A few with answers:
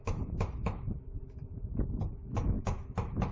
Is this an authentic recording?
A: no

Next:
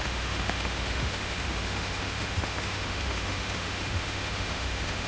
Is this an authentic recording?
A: no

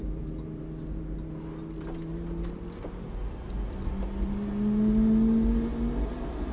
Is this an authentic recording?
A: yes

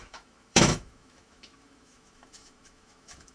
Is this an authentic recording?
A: no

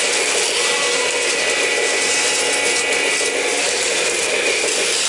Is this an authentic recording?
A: yes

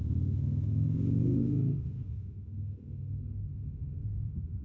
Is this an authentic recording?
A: no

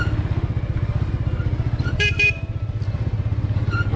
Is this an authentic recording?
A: yes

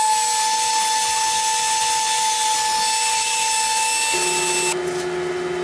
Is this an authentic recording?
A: yes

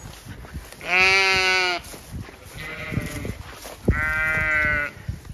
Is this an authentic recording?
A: yes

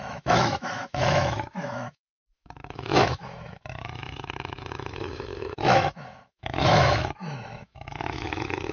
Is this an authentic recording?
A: no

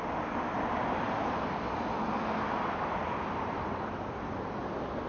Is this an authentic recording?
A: yes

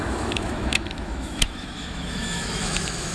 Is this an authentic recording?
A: no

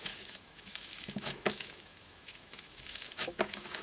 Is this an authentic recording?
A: no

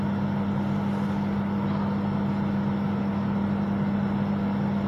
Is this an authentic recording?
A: yes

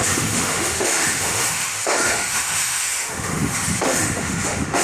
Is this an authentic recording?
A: no